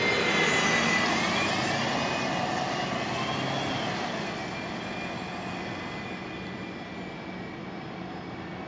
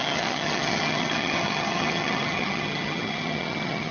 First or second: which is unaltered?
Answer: first